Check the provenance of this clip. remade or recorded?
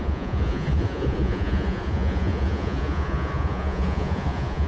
remade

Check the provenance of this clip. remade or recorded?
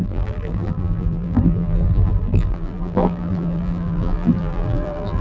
remade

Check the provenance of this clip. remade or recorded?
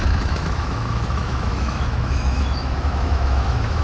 remade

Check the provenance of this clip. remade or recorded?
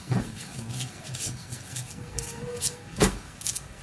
remade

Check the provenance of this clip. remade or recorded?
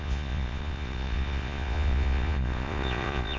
remade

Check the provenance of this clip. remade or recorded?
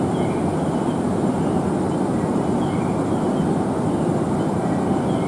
recorded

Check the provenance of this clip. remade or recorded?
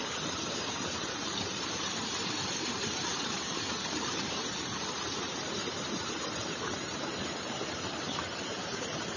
remade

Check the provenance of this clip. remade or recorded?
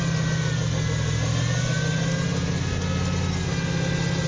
recorded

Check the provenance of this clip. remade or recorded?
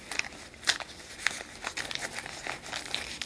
recorded